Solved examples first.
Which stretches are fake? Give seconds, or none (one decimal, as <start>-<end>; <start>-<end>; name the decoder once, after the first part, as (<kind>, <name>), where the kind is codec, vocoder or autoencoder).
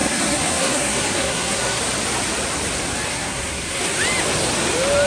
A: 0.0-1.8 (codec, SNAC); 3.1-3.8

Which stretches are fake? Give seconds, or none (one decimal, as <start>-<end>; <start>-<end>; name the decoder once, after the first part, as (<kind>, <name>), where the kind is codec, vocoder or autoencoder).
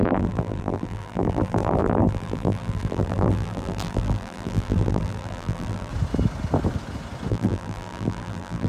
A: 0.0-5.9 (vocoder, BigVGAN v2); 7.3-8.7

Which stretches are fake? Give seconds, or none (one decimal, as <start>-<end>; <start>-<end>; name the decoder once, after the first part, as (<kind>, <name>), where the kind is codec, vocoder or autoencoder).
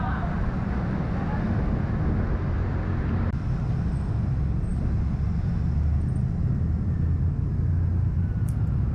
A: none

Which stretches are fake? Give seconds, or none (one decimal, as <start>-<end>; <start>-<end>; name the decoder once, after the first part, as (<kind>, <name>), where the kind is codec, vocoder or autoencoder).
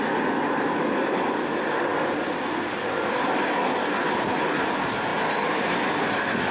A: none